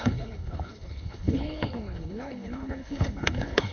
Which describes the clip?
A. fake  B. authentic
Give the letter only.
A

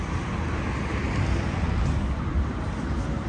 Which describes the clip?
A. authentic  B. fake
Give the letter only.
A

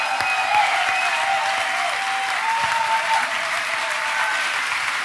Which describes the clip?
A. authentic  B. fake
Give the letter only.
A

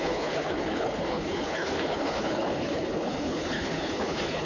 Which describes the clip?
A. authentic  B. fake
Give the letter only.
B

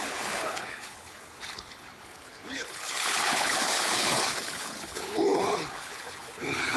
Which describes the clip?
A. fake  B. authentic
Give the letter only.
A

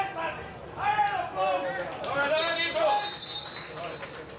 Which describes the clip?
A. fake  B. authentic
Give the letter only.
B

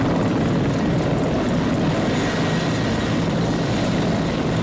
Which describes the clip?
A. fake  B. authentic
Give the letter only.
B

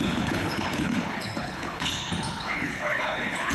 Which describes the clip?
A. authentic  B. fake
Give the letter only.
B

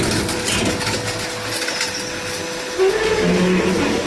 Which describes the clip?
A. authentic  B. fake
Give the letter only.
A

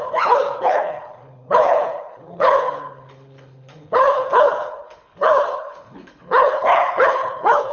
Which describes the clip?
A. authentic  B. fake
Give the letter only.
B